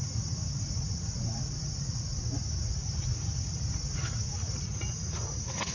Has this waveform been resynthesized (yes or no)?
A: yes